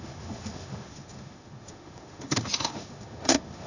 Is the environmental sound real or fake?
fake